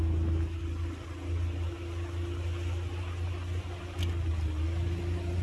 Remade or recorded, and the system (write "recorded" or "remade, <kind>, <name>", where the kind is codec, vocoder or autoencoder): recorded